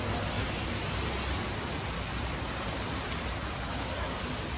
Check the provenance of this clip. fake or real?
real